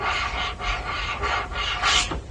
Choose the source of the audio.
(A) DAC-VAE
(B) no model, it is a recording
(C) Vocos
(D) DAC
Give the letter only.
B